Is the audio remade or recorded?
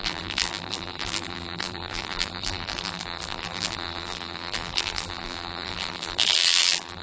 remade